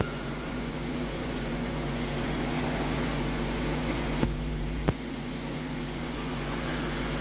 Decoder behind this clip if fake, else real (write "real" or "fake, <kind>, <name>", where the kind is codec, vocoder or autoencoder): fake, vocoder, Vocos